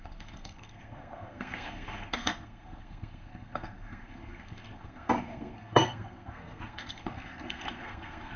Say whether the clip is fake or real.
fake